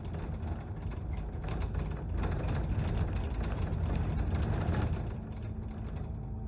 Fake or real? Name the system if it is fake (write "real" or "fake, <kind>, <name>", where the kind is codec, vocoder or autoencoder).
real